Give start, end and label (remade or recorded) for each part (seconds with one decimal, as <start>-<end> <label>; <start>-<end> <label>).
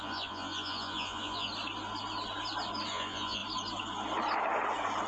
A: 0.0-1.5 remade; 1.5-2.9 recorded; 2.9-3.4 remade; 3.4-5.1 recorded